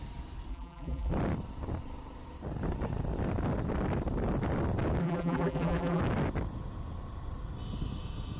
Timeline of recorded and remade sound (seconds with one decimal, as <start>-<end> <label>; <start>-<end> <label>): 0.0-0.5 recorded; 0.5-1.1 remade; 1.1-5.0 recorded; 5.0-6.0 remade; 6.0-8.4 recorded